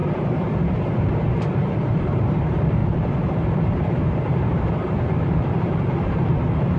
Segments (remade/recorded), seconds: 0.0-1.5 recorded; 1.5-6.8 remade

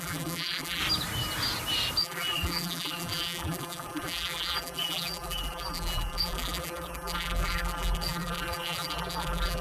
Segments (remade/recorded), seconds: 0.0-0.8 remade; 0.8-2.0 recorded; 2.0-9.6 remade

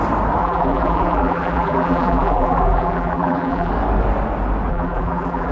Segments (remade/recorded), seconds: 0.0-0.4 recorded; 0.4-3.7 remade; 3.7-4.7 recorded; 4.7-5.5 remade